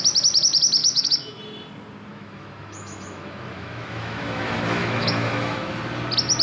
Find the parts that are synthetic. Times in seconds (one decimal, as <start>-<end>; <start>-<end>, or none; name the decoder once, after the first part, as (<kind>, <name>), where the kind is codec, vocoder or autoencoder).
0.8-1.4 (autoencoder, DAC-VAE); 2.1-5.7